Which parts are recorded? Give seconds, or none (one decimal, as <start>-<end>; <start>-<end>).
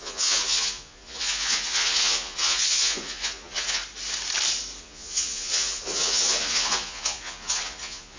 3.8-4.8